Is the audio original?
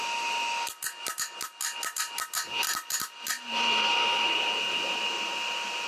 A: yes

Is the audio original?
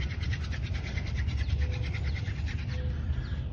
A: yes